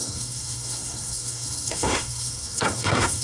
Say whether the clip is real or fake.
fake